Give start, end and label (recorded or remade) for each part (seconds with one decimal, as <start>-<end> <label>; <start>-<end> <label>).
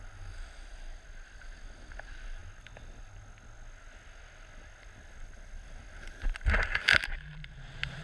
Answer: 0.0-8.0 recorded